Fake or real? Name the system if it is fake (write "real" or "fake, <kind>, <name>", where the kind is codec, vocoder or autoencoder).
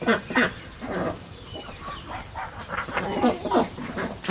fake, vocoder, BigVGAN v2